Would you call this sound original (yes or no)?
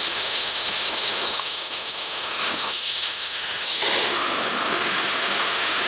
no